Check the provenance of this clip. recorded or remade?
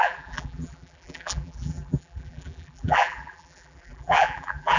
remade